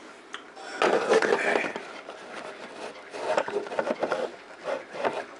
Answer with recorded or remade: recorded